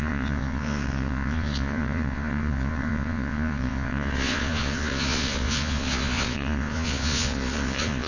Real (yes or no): no